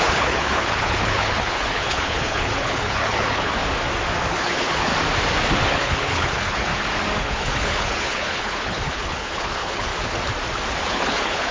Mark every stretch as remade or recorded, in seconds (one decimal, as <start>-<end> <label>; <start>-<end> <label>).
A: 0.0-3.6 remade; 3.6-4.3 recorded; 4.3-4.9 remade; 4.9-5.7 recorded; 5.7-6.7 remade; 6.7-7.2 recorded; 7.2-9.9 remade; 9.9-10.8 recorded; 10.8-11.5 remade